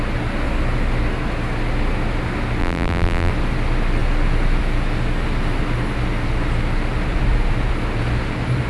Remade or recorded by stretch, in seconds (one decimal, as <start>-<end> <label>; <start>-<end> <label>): 0.0-2.6 recorded; 2.6-3.3 remade; 3.3-8.7 recorded